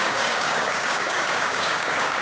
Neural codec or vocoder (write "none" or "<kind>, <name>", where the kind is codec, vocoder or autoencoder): codec, DAC